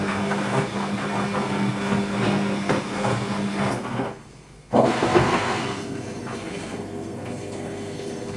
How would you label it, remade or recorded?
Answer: remade